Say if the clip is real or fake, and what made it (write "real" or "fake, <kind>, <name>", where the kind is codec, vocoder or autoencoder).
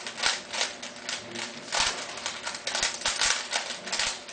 real